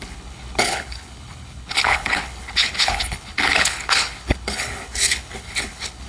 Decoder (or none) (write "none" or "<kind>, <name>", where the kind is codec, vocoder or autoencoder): codec, HILCodec